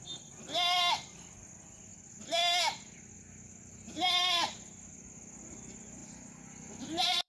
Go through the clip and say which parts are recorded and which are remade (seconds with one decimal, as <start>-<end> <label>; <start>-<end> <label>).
0.0-6.0 recorded; 6.0-7.3 remade